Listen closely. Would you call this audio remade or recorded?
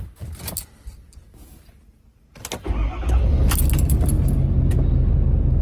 recorded